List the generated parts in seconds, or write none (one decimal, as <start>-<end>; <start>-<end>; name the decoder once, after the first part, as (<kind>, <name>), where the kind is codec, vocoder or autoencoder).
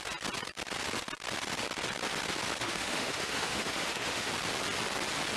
2.6-4.3 (autoencoder, DAC-VAE)